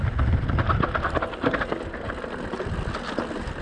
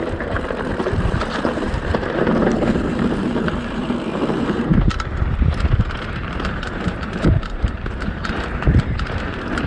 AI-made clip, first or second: second